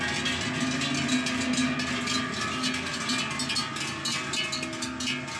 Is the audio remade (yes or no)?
no